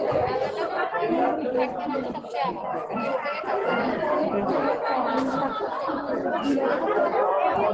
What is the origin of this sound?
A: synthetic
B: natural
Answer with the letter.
B